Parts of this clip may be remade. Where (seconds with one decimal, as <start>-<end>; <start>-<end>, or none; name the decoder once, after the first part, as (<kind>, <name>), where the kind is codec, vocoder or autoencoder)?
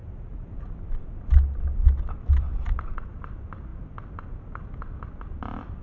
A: 0.0-0.8 (vocoder, BigVGAN v2); 2.5-3.3